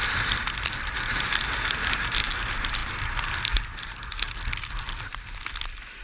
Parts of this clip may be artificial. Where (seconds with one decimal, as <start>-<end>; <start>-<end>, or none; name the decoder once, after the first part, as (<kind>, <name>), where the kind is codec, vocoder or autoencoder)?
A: none